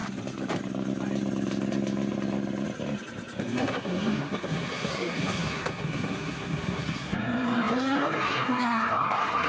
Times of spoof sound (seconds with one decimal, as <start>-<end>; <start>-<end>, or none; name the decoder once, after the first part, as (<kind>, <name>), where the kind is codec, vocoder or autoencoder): 3.4-9.5 (codec, SNAC)